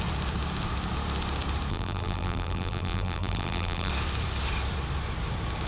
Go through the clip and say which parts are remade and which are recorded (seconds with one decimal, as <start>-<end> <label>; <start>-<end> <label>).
0.0-1.7 recorded; 1.7-3.9 remade; 3.9-5.7 recorded